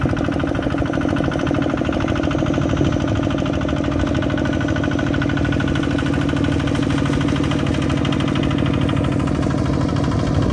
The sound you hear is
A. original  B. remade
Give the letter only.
A